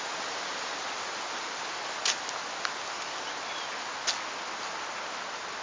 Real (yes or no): yes